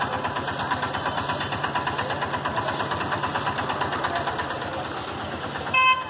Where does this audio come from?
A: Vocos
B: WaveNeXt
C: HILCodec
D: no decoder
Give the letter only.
D